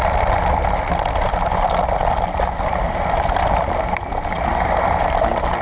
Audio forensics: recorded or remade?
recorded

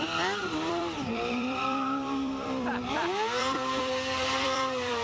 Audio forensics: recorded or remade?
remade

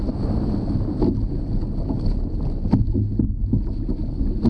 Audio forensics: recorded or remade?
recorded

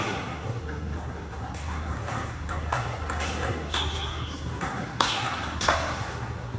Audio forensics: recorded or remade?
remade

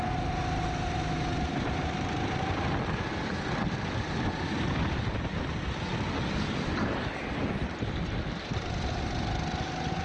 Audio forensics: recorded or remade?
recorded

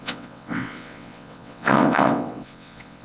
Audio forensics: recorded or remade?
remade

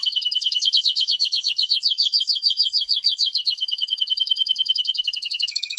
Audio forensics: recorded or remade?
remade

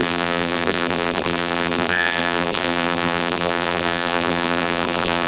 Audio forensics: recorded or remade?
remade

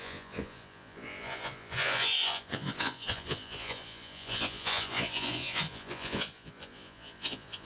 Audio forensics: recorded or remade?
remade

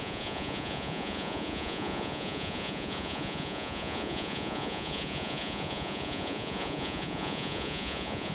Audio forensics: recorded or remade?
remade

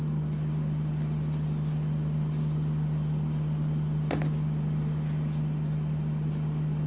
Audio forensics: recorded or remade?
recorded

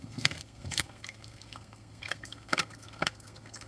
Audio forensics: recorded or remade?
remade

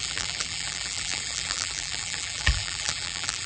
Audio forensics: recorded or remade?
remade